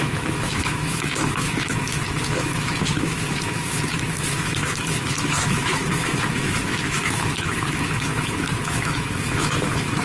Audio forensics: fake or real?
fake